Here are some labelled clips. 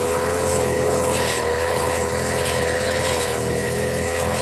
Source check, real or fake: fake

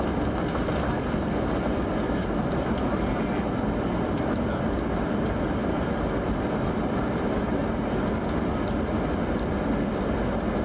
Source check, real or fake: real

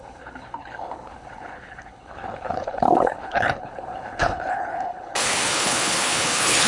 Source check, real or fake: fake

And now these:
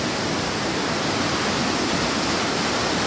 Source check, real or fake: real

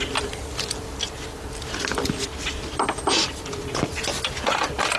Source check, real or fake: real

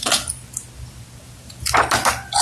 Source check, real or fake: real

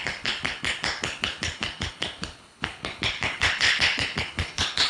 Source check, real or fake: fake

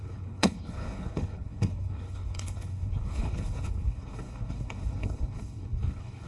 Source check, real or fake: fake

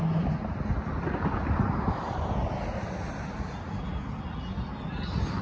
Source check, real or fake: real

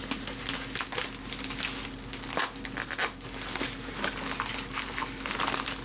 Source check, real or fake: real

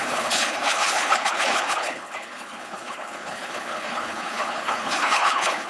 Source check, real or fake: fake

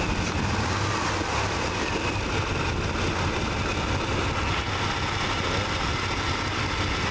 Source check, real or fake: real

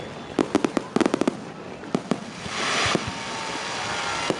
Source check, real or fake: real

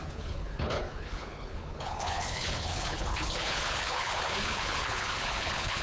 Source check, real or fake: fake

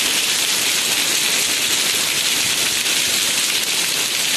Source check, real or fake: real